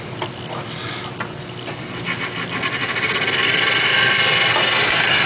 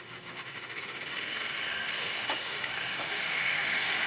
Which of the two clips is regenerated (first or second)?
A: second